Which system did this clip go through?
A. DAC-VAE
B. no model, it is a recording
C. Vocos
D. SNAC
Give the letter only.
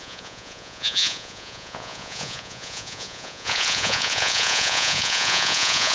C